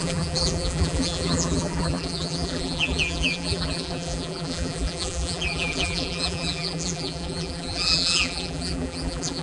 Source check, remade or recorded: remade